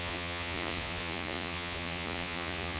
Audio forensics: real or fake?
fake